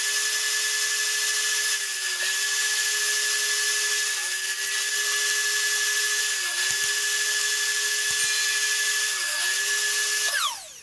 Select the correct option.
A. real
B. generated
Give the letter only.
A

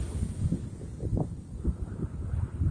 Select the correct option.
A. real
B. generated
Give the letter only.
A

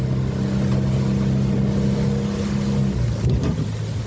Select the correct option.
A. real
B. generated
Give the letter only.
A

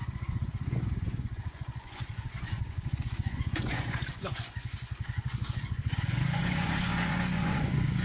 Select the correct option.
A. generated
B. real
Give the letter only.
A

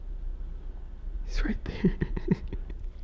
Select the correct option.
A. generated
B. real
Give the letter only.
B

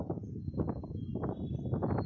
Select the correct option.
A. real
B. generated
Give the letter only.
A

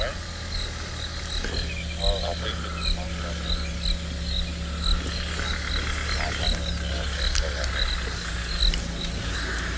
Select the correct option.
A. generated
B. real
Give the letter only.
B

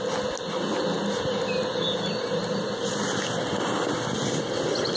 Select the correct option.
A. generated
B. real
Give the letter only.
B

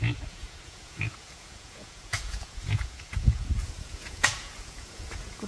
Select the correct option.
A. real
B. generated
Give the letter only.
B